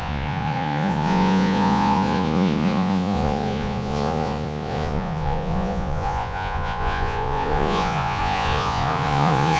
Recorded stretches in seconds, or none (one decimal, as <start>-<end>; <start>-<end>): none